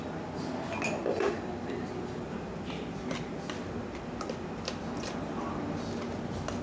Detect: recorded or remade recorded